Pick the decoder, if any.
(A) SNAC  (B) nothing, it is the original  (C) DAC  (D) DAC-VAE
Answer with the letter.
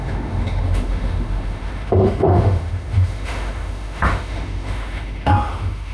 D